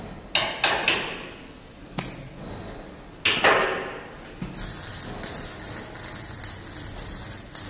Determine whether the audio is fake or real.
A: real